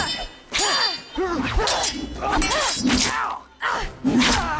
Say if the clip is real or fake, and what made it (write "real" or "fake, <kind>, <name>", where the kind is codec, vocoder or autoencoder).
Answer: real